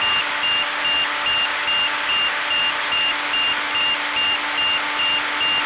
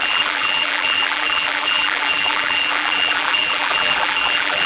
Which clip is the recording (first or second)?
first